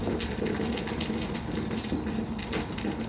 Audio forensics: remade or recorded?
recorded